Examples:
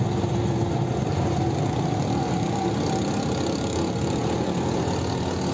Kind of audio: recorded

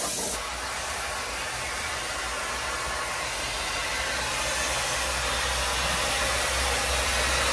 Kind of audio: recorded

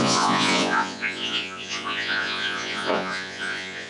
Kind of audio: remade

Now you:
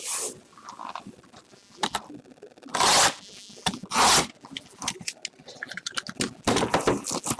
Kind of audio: recorded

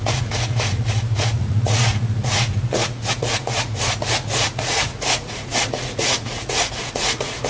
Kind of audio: remade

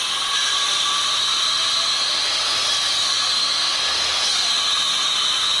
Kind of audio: recorded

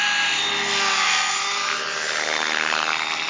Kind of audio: recorded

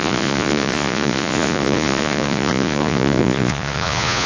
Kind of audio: remade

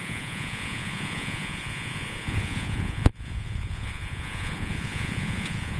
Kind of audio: remade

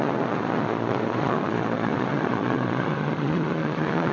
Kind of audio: remade